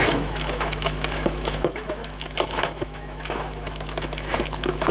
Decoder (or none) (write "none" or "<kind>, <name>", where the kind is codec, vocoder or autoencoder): autoencoder, DAC-VAE